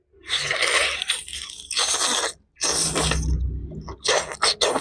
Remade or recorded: recorded